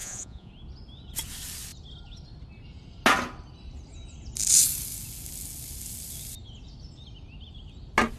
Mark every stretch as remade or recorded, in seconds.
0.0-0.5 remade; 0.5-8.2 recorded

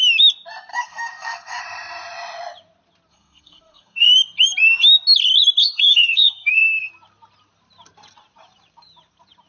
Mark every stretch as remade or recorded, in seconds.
0.0-0.7 recorded; 0.7-1.6 remade; 1.6-3.1 recorded; 3.1-4.1 remade; 4.1-5.6 recorded; 5.6-6.9 remade; 6.9-9.5 recorded